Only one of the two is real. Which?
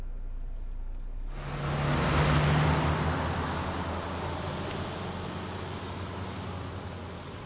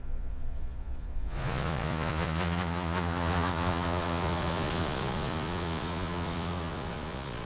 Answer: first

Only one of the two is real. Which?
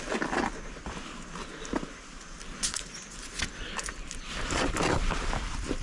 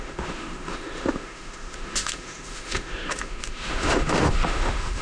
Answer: first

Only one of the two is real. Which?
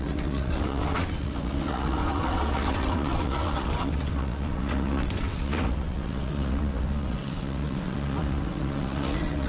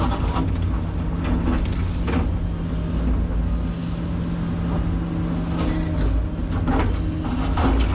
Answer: second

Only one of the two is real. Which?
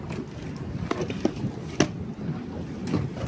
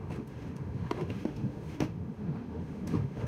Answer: first